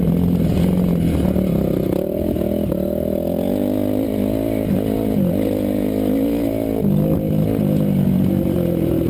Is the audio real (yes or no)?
yes